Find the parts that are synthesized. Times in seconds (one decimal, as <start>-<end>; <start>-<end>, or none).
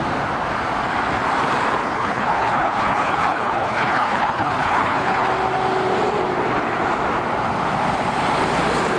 1.8-5.3